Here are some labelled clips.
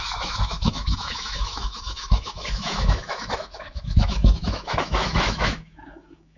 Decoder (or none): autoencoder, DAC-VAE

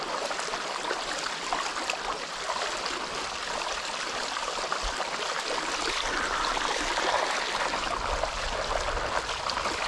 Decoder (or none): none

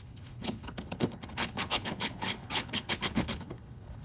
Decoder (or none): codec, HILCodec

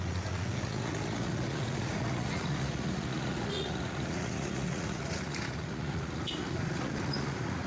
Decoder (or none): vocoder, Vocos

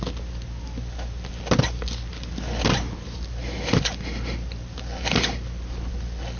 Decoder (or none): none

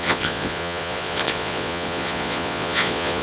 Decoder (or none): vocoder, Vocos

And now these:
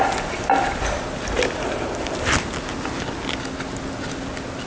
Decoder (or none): none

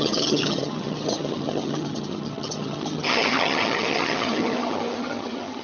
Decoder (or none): vocoder, HiFi-GAN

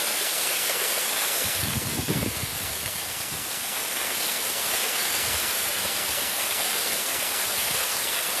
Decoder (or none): codec, SNAC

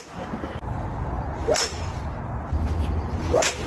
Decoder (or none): none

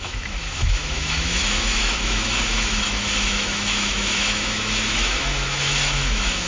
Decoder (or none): autoencoder, DAC-VAE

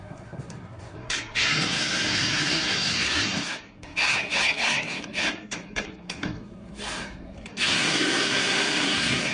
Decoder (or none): codec, SNAC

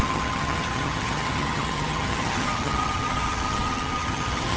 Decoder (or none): vocoder, HiFi-GAN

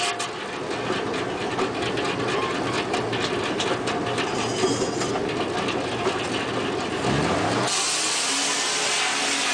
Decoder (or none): none